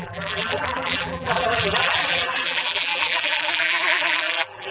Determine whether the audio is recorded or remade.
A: remade